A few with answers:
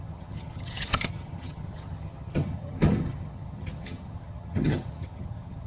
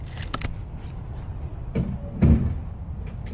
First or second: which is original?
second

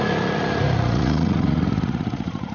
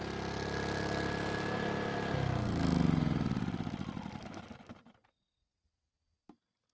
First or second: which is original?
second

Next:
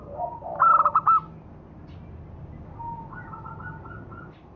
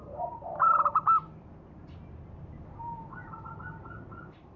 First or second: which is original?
first